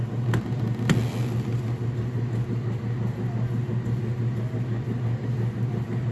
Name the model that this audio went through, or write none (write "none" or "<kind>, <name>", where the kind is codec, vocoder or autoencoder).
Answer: none